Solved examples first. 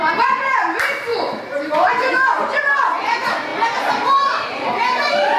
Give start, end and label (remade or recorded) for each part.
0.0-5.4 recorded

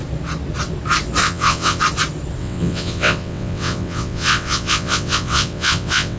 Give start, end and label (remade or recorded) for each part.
0.0-1.2 recorded; 1.2-1.8 remade; 1.8-2.4 recorded; 2.4-6.2 remade

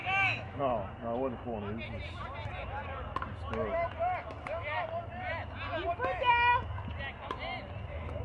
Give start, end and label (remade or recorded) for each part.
0.0-0.6 remade; 0.6-8.2 recorded

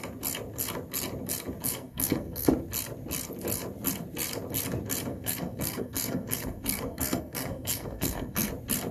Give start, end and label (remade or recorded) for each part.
0.0-1.6 recorded; 1.6-2.5 remade; 2.5-5.1 recorded; 5.1-8.5 remade; 8.5-8.9 recorded